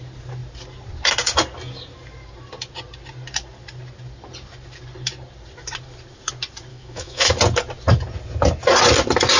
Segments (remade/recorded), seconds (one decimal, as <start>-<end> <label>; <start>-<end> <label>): 0.0-6.7 recorded; 6.7-7.3 remade; 7.3-9.4 recorded